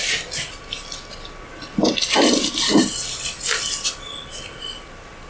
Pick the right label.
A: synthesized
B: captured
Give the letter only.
B